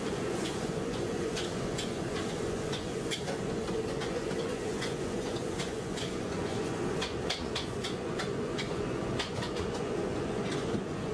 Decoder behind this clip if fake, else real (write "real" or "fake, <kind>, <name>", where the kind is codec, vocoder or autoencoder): fake, vocoder, Vocos